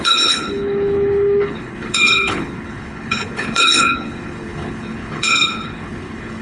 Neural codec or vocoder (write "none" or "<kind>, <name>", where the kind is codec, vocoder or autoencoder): codec, HILCodec